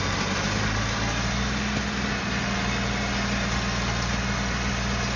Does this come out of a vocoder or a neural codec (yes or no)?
no